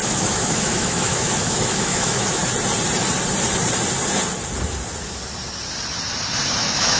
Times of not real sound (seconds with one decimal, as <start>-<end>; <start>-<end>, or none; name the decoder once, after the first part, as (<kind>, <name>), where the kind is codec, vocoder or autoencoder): 0.0-2.4 (autoencoder, DAC-VAE); 6.6-7.0